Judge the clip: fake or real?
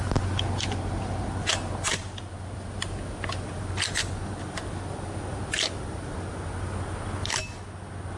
real